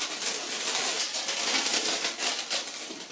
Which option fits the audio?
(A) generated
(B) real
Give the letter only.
B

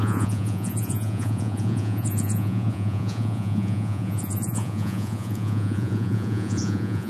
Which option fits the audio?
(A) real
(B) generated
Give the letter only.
B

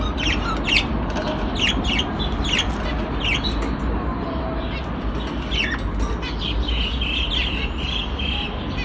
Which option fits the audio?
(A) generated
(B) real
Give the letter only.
B